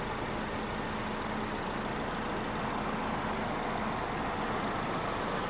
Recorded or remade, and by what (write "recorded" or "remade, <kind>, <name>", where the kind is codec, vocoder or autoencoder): recorded